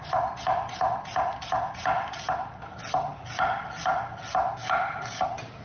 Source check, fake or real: real